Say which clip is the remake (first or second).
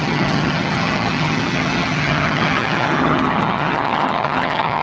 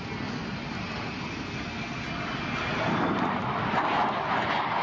first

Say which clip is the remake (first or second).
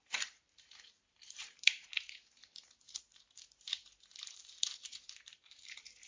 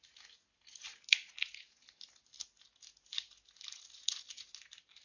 first